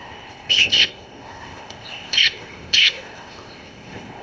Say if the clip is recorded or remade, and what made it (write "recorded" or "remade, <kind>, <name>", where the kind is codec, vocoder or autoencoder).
remade, codec, ZipCodec